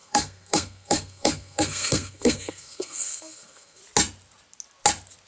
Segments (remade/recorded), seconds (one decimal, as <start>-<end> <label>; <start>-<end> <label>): 0.0-3.8 remade; 3.8-5.3 recorded